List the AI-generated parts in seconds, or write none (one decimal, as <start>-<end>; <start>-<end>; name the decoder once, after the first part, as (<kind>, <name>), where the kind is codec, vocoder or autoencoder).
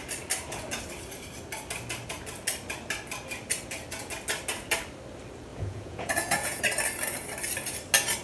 5.5-6.6 (vocoder, Vocos)